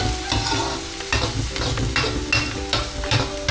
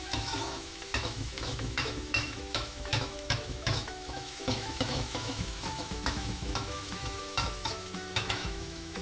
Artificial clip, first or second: second